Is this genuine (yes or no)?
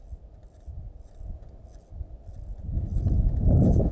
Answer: yes